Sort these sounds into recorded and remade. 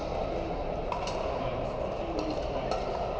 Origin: recorded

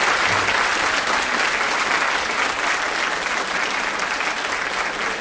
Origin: recorded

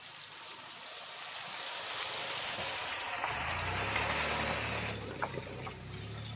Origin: recorded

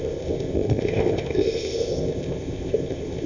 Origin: remade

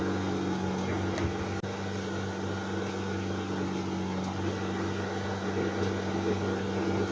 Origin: recorded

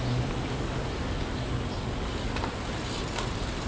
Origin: recorded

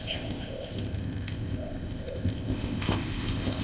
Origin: remade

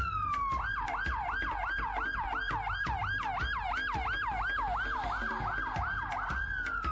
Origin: recorded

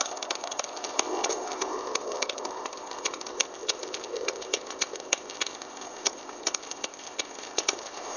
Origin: remade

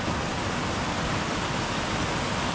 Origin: recorded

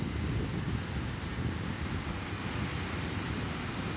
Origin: recorded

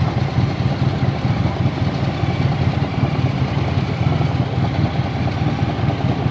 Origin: recorded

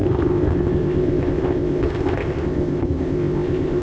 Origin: remade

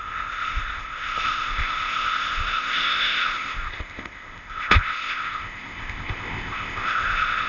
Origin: remade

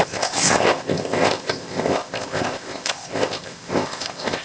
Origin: remade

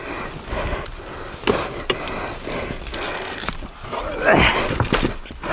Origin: recorded